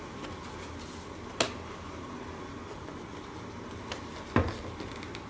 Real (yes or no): yes